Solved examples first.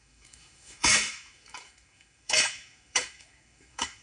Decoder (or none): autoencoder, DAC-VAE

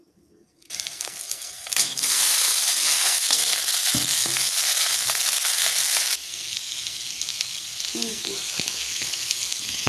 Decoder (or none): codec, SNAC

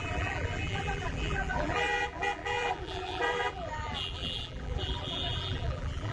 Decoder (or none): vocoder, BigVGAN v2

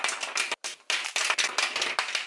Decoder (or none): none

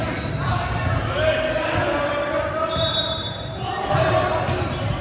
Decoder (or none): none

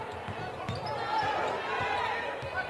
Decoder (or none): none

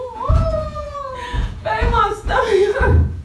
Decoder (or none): vocoder, Vocos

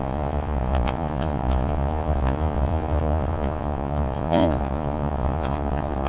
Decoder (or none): vocoder, Vocos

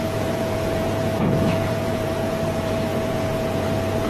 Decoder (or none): vocoder, Vocos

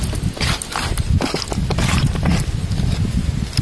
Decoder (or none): none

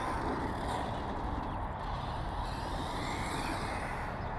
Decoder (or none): none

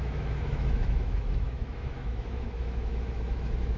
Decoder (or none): autoencoder, DAC-VAE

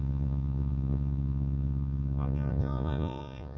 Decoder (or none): vocoder, Vocos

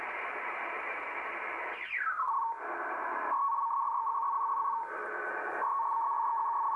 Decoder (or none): vocoder, BigVGAN v2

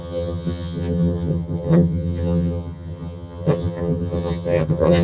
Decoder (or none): vocoder, HiFi-GAN